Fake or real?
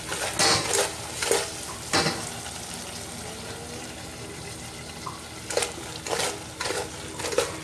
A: real